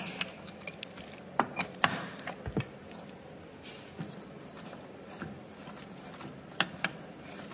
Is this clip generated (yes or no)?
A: no